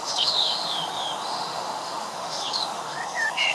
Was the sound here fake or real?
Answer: fake